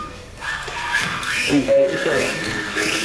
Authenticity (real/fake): fake